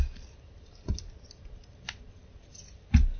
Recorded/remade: recorded